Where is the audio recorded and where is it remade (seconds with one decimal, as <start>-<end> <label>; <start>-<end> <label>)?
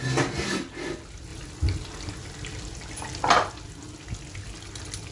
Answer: 0.0-5.1 recorded